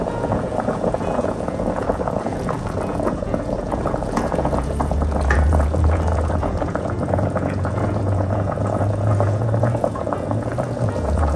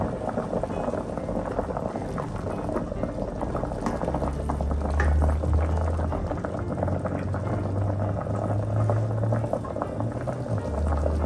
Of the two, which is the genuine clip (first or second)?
second